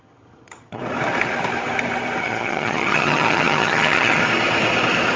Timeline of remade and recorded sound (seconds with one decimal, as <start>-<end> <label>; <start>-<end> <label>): 0.0-0.8 remade; 0.8-2.2 recorded; 2.2-4.2 remade; 4.2-5.2 recorded